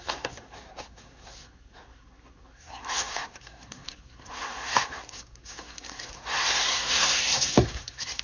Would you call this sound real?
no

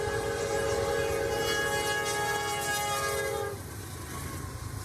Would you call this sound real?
no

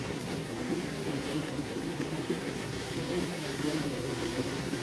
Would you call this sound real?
no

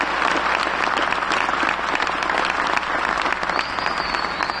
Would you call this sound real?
yes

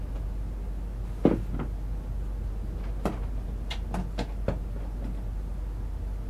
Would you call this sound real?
yes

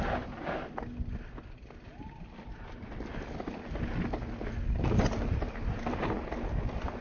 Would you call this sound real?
yes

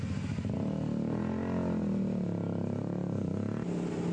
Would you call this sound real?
yes